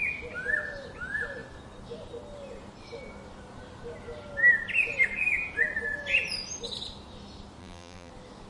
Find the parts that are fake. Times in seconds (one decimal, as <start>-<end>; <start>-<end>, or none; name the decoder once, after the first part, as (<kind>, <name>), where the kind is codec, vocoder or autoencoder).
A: 7.6-8.1 (vocoder, BigVGAN v2)

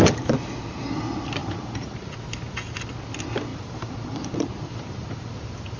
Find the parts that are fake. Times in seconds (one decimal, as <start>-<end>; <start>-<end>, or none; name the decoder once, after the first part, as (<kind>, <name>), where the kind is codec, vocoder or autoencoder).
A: 1.4-2.1 (vocoder, BigVGAN v2); 3.5-5.3

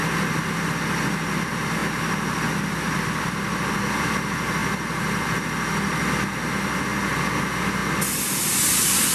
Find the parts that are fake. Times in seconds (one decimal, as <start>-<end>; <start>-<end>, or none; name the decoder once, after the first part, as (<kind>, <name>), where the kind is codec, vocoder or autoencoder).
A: none

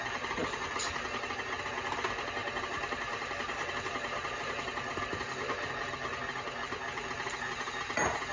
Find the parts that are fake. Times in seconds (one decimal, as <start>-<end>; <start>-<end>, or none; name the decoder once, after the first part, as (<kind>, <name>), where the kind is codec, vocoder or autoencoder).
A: 2.4-3.7 (vocoder, BigVGAN v2)